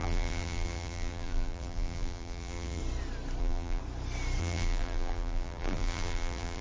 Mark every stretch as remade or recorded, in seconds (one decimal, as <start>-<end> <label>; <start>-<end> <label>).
0.0-2.8 remade; 2.8-3.4 recorded; 3.4-3.8 remade; 3.8-4.4 recorded; 4.4-6.6 remade